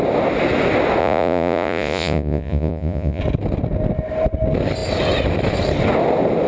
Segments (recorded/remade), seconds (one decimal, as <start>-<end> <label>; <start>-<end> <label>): 0.0-1.0 recorded; 1.0-3.2 remade; 3.2-6.5 recorded